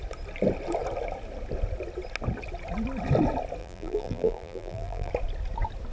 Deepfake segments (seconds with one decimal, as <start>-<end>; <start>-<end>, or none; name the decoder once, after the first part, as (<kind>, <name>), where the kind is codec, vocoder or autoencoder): 3.6-5.1 (vocoder, BigVGAN v2)